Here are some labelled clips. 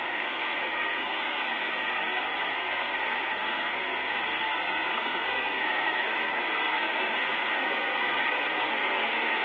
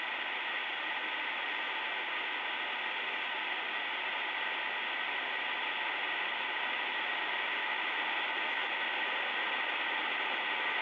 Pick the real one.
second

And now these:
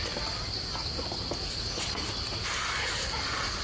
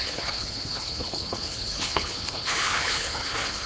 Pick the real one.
first